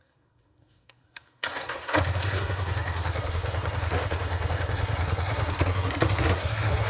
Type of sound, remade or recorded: remade